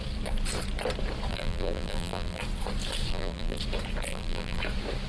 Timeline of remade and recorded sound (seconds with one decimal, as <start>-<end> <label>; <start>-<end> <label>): 0.0-1.3 recorded; 1.3-2.4 remade; 2.4-3.1 recorded; 3.1-3.6 remade; 3.6-4.1 recorded; 4.1-4.6 remade; 4.6-5.1 recorded